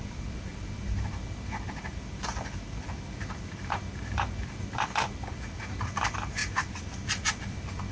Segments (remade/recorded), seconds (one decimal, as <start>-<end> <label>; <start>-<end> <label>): 0.0-7.9 recorded